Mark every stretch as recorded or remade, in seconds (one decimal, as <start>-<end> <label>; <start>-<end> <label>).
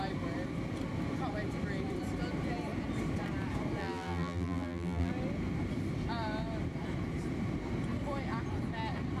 0.0-3.8 recorded; 3.8-5.1 remade; 5.1-9.2 recorded